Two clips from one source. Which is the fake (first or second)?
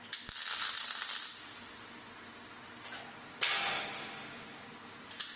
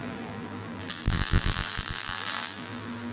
second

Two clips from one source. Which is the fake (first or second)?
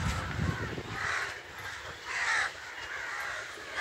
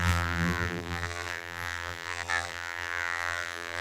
second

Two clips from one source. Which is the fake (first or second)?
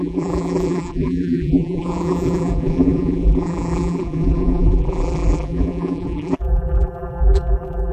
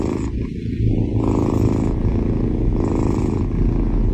first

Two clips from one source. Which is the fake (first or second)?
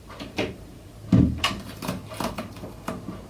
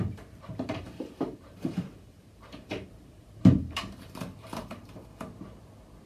second